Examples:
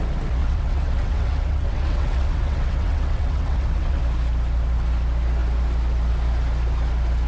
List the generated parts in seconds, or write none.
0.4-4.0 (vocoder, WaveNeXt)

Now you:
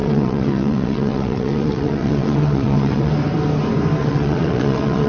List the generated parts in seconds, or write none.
0.0-3.1 (vocoder, WaveNeXt); 4.0-5.1

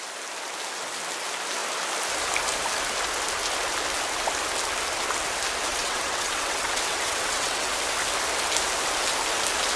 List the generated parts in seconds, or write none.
5.7-7.7 (vocoder, WaveNeXt)